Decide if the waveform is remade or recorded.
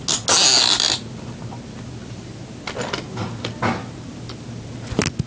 recorded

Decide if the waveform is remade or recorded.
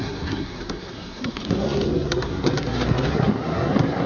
remade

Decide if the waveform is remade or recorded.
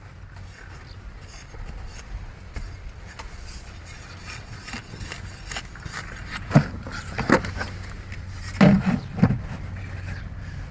recorded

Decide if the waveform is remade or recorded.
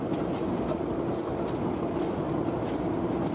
recorded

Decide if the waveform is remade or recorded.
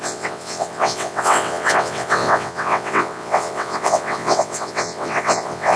remade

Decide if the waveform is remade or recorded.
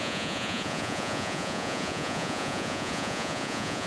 remade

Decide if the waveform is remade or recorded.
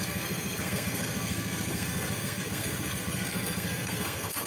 remade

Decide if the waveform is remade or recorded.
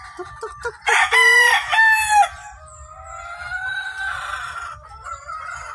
recorded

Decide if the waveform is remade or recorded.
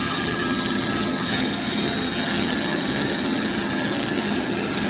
remade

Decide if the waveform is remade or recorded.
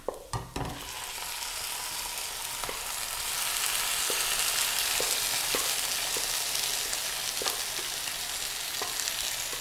recorded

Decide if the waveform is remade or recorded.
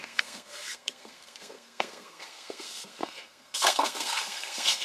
remade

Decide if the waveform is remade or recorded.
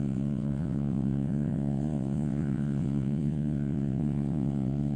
remade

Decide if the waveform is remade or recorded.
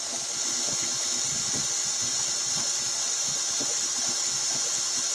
recorded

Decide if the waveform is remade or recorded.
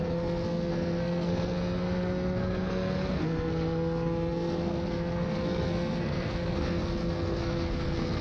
remade